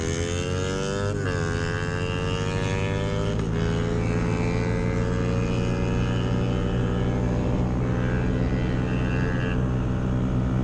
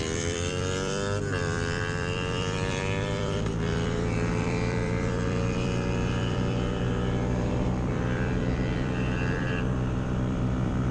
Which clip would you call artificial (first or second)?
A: second